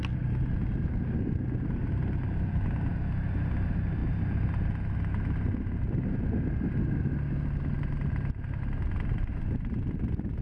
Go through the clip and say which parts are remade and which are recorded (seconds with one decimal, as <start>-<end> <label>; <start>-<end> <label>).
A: 0.0-10.4 recorded